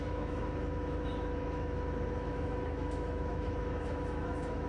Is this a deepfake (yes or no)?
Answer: yes